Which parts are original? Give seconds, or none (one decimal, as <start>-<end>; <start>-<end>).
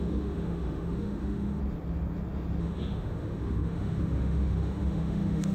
1.6-2.6